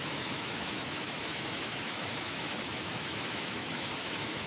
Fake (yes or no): yes